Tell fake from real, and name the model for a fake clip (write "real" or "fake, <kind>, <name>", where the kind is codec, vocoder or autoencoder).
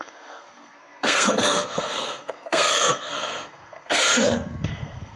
fake, codec, SNAC